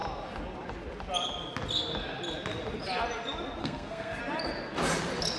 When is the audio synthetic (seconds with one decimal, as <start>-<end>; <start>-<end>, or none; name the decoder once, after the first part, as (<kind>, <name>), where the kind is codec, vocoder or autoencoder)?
3.6-4.2 (codec, SNAC)